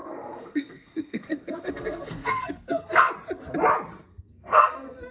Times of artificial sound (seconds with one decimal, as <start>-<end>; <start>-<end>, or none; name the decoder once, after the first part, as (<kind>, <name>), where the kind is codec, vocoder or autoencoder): 0.0-3.1 (codec, SNAC); 4.1-5.1